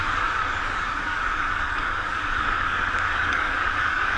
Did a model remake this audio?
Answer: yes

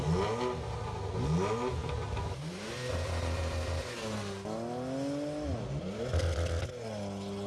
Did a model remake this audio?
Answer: no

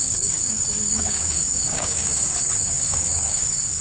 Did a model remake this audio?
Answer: yes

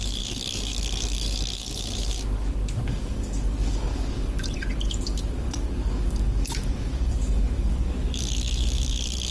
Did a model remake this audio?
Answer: yes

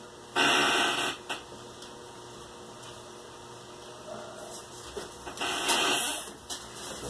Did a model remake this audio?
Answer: no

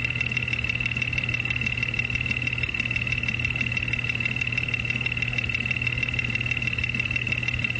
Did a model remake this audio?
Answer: no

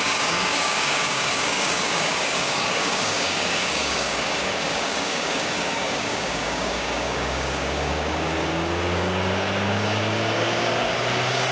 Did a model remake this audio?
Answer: yes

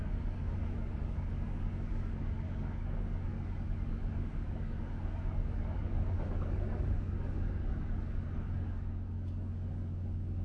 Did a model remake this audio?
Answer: yes